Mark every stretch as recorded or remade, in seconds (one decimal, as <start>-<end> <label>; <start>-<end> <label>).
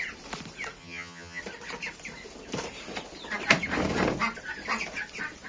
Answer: 0.0-0.8 recorded; 0.8-1.4 remade; 1.4-5.5 recorded